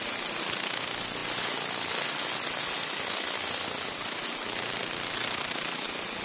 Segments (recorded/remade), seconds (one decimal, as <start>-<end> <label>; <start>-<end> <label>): 0.0-6.2 recorded